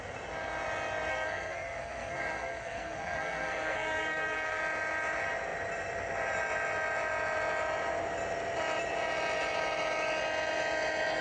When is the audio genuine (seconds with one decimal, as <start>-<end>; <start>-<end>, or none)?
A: 0.0-1.1; 4.6-11.2

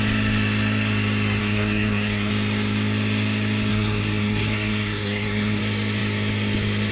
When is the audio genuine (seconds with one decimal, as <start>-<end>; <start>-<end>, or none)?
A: 0.0-1.4; 2.3-3.7; 5.6-6.9

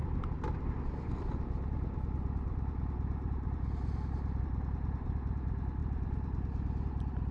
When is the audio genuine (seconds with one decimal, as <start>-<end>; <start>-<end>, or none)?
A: 0.0-7.3